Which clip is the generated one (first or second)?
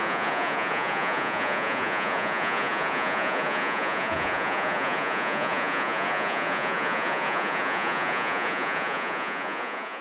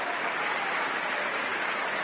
first